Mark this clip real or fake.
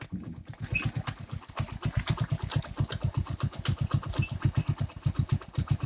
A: real